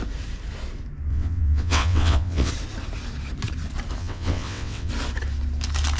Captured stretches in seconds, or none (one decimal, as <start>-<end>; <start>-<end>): 0.0-1.1; 2.5-4.0; 4.9-6.0